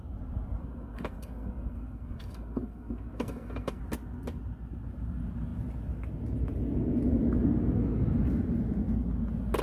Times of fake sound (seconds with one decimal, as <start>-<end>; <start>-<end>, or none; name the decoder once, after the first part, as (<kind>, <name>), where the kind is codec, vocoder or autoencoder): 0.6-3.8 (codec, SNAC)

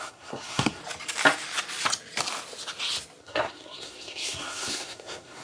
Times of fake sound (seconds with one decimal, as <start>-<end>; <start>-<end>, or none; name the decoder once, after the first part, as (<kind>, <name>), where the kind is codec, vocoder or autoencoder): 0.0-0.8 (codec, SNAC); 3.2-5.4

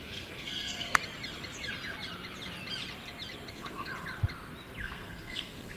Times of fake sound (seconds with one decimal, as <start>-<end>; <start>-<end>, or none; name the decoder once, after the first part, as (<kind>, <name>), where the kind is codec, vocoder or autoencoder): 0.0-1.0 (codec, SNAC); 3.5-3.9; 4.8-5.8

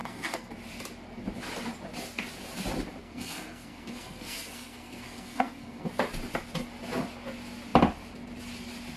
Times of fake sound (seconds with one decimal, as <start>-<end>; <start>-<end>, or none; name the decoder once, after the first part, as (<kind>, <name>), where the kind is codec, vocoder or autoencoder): 0.0-0.5 (codec, SNAC); 3.0-5.9

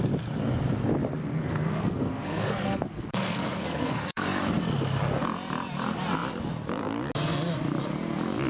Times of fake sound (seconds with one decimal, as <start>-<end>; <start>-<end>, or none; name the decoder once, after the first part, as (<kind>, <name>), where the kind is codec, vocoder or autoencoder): 1.3-4.4 (codec, SNAC)

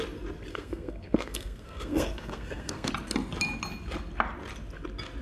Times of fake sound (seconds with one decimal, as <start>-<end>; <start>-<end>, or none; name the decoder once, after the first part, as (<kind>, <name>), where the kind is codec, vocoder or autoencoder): 0.5-2.9 (codec, SNAC)

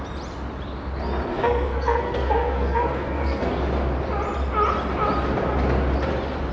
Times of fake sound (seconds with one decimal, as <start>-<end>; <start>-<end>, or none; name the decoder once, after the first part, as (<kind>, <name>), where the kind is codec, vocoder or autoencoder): 1.3-3.5 (codec, SNAC)